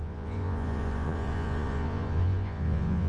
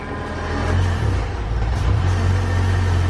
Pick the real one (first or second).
second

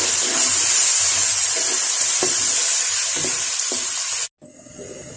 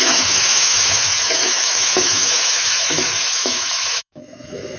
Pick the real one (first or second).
first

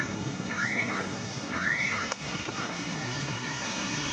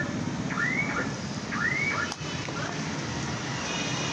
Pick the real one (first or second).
second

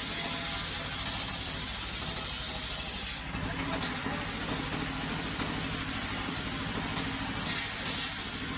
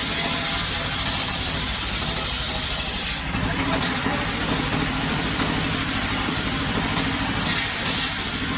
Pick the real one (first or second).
first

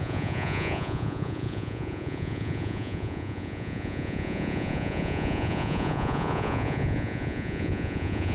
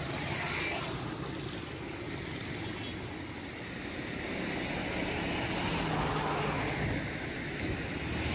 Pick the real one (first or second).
second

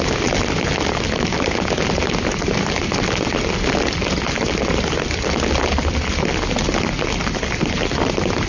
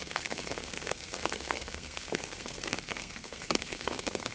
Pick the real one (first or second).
first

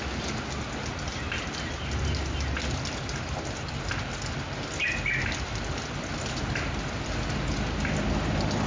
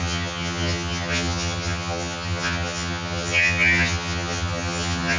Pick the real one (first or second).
first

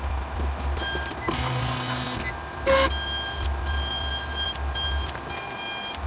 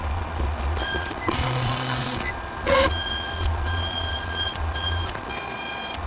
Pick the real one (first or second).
first